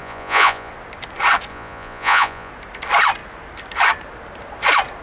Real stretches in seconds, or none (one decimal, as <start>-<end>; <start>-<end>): 0.7-1.5; 2.5-5.0